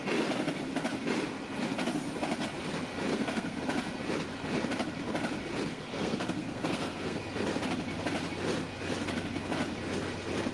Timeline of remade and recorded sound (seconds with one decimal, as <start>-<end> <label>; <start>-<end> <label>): 0.0-3.1 recorded; 3.1-3.6 remade; 3.6-5.7 recorded; 5.7-7.2 remade; 7.2-10.5 recorded